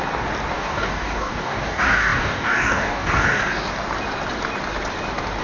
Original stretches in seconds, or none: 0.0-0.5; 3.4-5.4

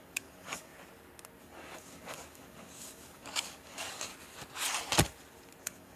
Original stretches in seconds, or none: 0.7-1.4; 4.1-5.6

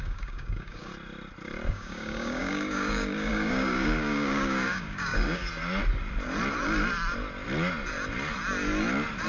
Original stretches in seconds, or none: 0.9-1.7; 5.4-9.3

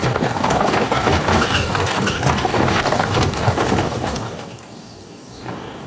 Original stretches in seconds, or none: none

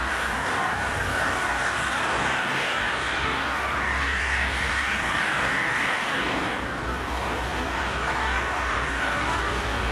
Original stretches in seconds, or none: none

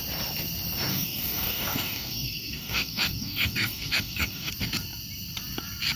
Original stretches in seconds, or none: 0.0-0.9; 4.5-6.0

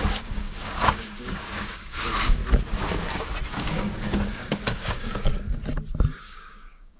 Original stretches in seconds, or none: 2.4-3.6; 5.3-6.1